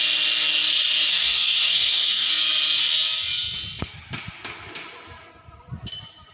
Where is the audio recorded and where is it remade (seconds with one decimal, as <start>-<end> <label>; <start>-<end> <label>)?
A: 0.0-1.1 recorded; 1.1-2.3 remade; 2.3-6.3 recorded

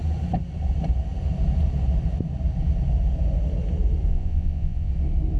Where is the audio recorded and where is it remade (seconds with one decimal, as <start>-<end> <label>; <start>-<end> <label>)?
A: 0.0-4.1 recorded; 4.1-4.9 remade; 4.9-5.4 recorded

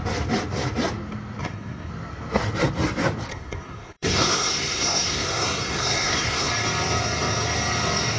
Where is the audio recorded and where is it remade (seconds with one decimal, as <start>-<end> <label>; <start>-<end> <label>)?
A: 0.0-1.4 recorded; 1.4-1.9 remade; 1.9-3.3 recorded; 3.3-6.5 remade; 6.5-8.2 recorded

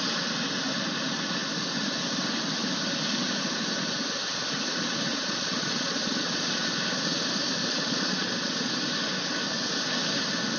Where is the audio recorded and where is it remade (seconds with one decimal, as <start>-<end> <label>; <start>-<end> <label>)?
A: 0.0-5.1 recorded; 5.1-6.7 remade; 6.7-7.6 recorded; 7.6-8.7 remade; 8.7-10.6 recorded

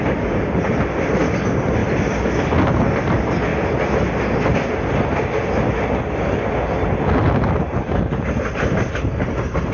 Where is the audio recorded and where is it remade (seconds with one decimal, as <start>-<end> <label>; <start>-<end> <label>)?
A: 0.0-9.7 recorded

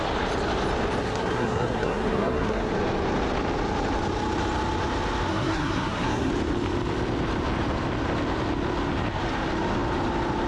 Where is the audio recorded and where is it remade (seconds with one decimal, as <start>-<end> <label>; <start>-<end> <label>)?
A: 0.0-1.0 recorded; 1.0-2.7 remade; 2.7-5.3 recorded; 5.3-6.3 remade; 6.3-10.5 recorded

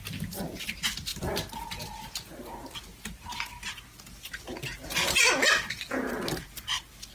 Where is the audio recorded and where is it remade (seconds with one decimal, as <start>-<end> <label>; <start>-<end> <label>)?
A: 0.0-7.1 recorded